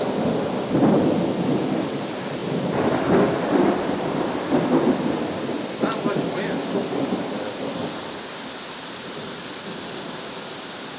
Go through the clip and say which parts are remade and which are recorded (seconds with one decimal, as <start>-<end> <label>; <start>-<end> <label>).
0.0-2.4 recorded; 2.4-2.9 remade; 2.9-6.8 recorded; 6.8-7.6 remade; 7.6-11.0 recorded